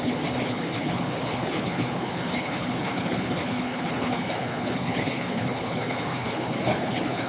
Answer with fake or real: fake